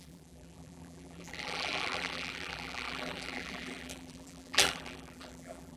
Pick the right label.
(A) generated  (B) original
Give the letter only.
A